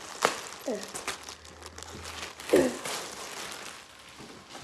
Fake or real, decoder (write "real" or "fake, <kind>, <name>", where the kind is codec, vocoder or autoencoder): real